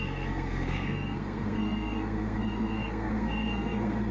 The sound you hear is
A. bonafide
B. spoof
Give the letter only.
B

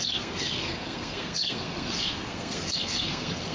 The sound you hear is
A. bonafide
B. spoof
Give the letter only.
B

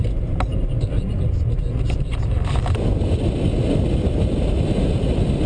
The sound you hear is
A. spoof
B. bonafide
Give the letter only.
B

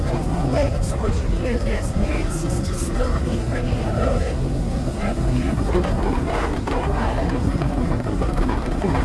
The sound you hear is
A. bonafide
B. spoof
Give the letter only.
B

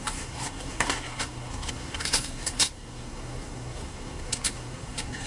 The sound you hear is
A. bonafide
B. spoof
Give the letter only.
B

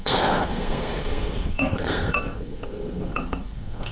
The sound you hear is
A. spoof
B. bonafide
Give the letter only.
A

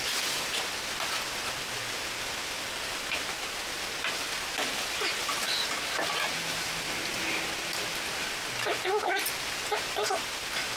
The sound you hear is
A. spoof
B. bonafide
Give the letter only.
B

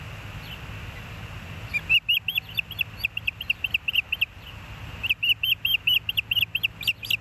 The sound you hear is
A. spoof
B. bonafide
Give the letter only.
B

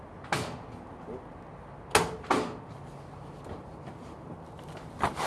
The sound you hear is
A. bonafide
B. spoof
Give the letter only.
A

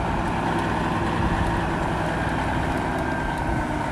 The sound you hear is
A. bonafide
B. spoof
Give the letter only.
A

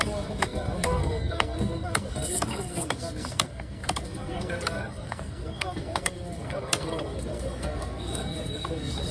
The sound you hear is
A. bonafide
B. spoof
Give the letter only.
B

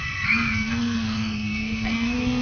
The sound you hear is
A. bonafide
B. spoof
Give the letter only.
B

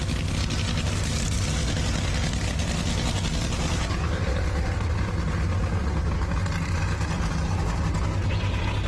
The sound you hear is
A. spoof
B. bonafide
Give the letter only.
B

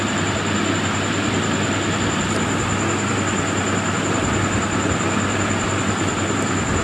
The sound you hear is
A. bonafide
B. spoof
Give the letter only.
A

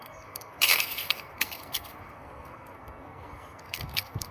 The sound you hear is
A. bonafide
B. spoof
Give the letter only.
B